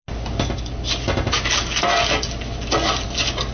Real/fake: real